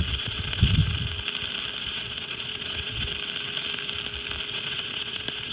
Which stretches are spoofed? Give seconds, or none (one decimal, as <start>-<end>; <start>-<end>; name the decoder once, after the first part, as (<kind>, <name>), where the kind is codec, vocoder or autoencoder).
0.0-0.8 (vocoder, Vocos); 1.8-3.1; 4.5-5.5